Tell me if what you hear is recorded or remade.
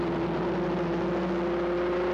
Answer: recorded